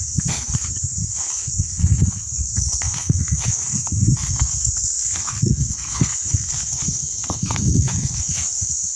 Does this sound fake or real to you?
fake